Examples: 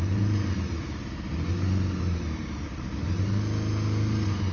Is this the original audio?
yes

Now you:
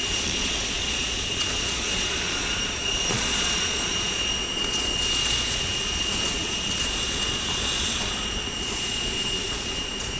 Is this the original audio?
no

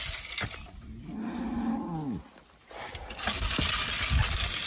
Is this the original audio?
yes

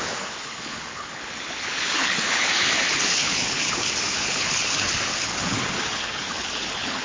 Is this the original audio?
no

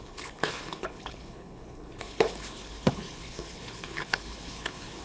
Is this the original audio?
no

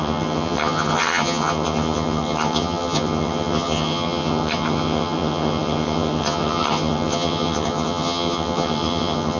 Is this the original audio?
no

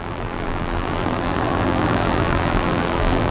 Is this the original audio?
no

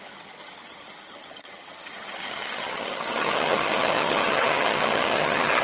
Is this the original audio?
no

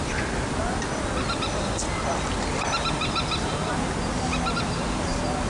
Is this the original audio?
yes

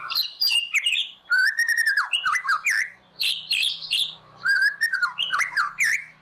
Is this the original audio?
no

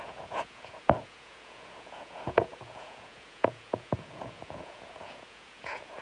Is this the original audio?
no